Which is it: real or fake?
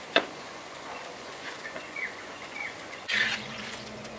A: fake